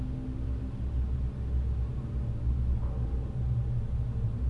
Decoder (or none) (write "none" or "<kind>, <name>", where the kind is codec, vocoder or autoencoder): none